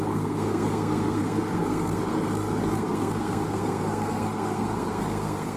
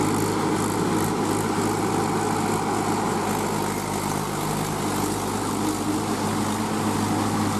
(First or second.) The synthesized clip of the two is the first